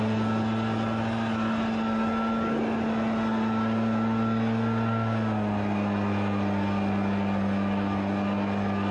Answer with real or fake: real